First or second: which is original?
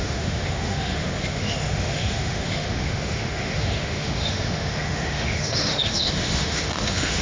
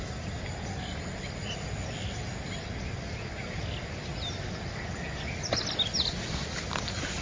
second